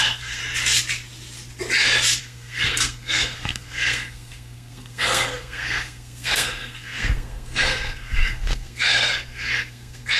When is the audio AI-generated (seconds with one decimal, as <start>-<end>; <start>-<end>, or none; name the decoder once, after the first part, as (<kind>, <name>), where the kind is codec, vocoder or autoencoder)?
0.0-0.4 (codec, SNAC); 2.2-10.2